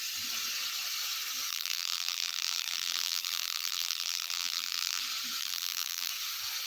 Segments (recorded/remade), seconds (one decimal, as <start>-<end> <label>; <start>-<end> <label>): 0.0-1.5 recorded; 1.5-5.0 remade; 5.0-5.4 recorded; 5.4-6.1 remade; 6.1-6.7 recorded